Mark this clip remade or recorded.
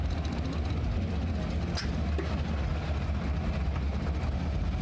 recorded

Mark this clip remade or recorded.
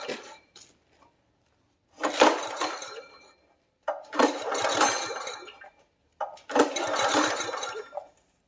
remade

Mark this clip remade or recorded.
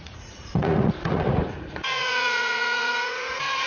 remade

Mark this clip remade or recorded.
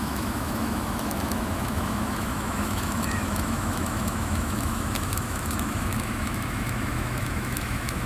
remade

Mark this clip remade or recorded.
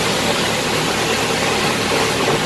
recorded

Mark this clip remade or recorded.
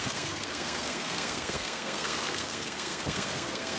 remade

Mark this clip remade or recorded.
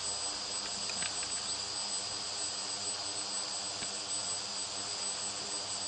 recorded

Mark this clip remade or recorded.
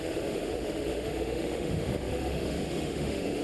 remade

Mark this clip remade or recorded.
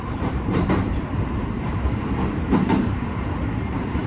remade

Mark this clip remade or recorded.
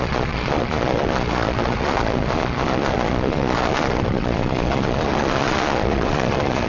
remade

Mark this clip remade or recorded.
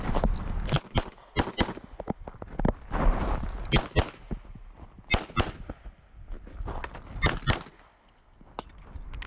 recorded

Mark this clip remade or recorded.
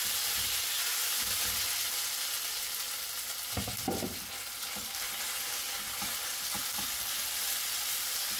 recorded